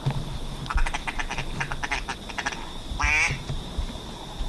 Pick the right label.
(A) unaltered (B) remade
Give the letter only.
A